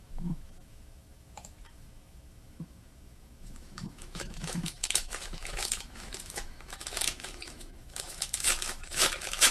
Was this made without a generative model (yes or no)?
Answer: no